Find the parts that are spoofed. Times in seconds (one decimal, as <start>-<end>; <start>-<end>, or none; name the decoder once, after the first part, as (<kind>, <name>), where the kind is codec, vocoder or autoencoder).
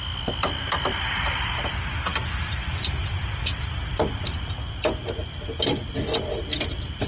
none